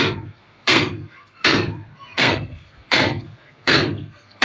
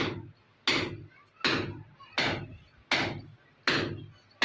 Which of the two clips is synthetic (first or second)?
first